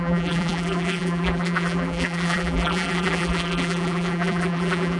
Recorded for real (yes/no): no